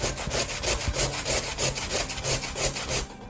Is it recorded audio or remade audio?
recorded